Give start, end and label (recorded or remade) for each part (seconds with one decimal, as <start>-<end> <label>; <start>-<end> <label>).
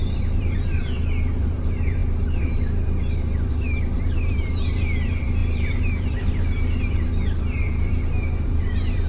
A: 0.0-9.1 remade